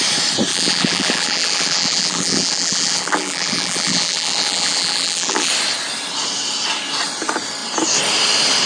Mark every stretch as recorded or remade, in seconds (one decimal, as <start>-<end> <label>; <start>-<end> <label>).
0.0-0.5 recorded; 0.5-5.5 remade; 5.5-8.7 recorded